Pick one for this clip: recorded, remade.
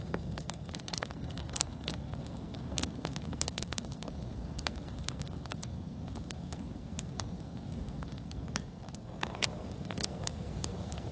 remade